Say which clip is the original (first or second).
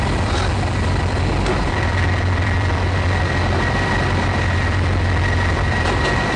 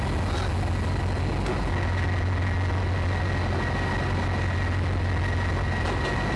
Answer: second